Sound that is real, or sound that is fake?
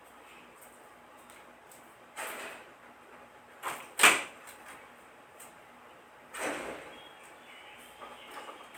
real